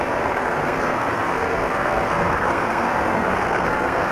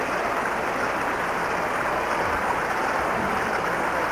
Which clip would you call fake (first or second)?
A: first